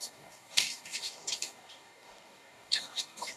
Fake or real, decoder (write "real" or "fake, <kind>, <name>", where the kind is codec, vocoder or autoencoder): fake, codec, DAC